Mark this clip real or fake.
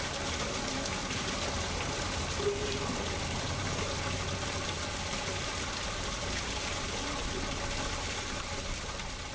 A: real